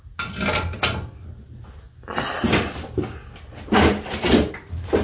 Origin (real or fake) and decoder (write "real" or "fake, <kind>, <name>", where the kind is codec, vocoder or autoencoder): real